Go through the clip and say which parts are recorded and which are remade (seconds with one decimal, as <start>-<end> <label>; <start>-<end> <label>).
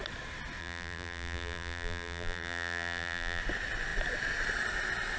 0.0-0.6 recorded; 0.6-3.4 remade; 3.4-5.2 recorded